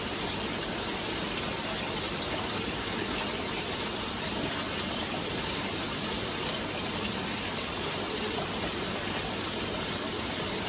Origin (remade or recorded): remade